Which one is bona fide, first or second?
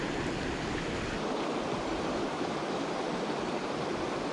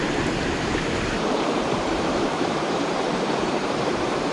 first